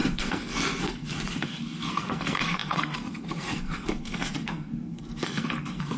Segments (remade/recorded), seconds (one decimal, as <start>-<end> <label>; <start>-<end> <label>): 0.0-6.0 remade